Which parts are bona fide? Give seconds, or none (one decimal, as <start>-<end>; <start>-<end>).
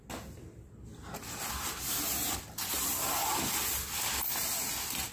0.0-5.1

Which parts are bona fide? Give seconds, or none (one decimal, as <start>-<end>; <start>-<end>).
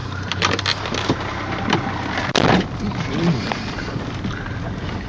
0.0-5.1